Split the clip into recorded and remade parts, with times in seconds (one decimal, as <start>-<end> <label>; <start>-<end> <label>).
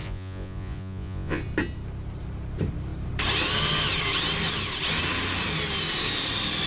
0.0-1.4 remade; 1.4-6.7 recorded